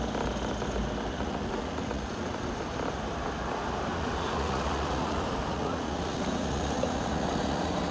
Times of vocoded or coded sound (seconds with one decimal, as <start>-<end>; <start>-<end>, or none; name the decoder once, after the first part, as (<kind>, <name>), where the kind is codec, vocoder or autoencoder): 1.1-2.5 (vocoder, Vocos); 3.9-7.9